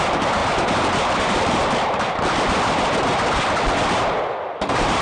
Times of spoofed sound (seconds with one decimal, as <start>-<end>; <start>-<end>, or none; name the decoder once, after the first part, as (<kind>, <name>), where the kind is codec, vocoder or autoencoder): 0.0-0.4 (vocoder, BigVGAN v2); 1.2-1.6; 4.6-5.0